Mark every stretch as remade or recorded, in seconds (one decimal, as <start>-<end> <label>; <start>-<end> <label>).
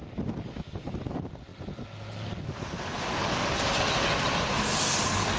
0.0-5.4 recorded